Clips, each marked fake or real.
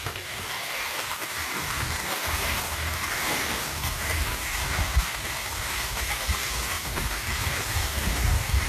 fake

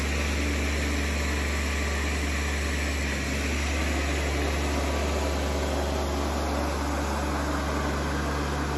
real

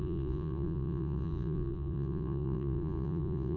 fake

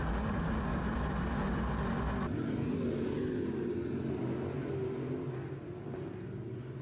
real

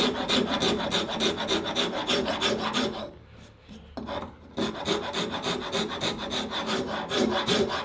real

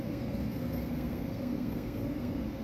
fake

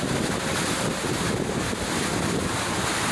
fake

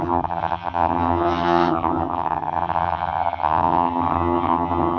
fake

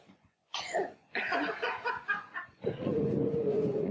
fake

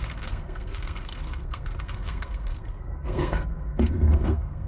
fake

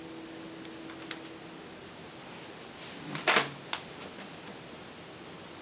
real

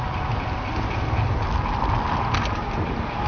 real